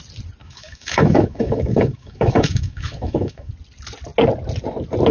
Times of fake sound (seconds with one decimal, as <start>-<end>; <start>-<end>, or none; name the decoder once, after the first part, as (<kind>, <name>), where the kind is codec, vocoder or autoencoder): 0.4-3.5 (autoencoder, DAC-VAE)